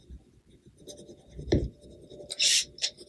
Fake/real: real